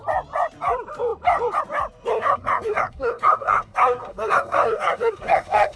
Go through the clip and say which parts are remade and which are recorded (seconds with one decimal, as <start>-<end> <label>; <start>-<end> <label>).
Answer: 0.0-2.1 recorded; 2.1-5.8 remade